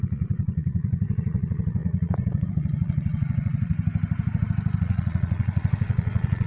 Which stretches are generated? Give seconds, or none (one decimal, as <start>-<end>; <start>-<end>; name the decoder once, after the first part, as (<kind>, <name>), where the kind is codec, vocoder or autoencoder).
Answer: 0.0-3.7 (vocoder, Vocos); 4.8-6.5